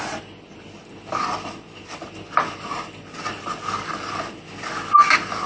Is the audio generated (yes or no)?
no